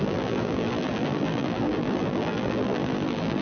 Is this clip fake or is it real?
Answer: fake